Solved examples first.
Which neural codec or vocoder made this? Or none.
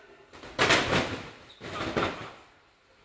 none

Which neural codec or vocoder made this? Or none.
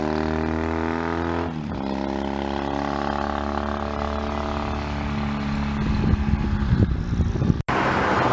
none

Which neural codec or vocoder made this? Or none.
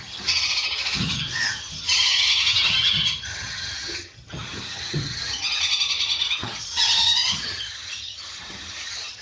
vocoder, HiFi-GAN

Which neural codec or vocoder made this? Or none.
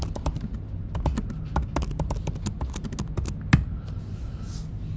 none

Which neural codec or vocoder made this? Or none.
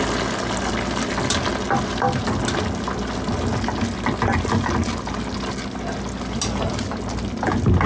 none